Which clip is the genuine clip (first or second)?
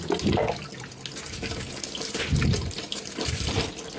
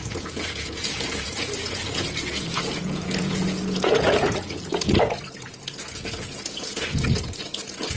first